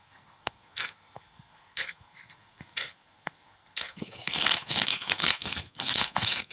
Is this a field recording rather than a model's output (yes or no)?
no